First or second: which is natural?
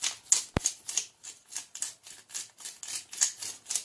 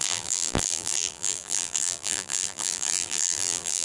first